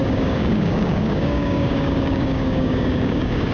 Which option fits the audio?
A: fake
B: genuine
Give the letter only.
A